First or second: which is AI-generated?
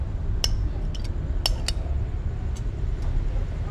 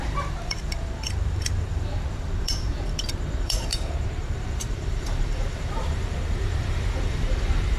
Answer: second